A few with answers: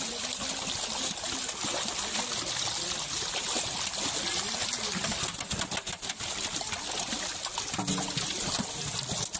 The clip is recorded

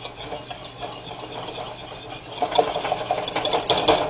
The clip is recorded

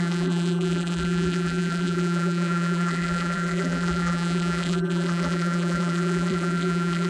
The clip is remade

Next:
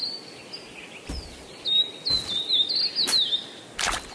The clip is recorded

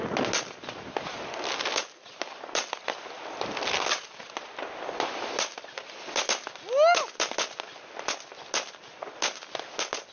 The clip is recorded